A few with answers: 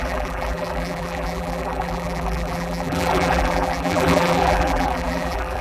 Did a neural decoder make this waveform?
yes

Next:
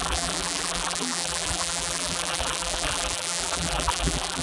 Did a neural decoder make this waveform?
yes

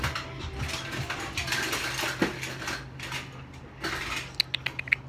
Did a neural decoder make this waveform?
no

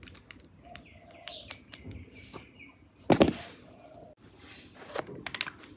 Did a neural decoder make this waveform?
no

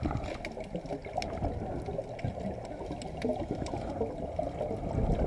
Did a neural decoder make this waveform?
no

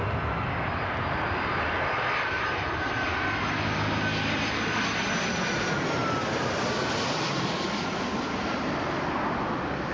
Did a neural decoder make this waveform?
no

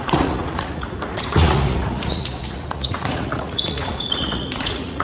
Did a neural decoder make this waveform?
yes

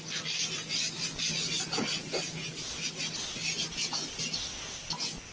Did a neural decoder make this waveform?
no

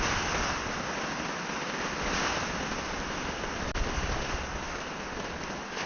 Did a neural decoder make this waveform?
no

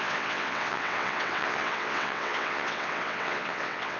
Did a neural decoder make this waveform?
yes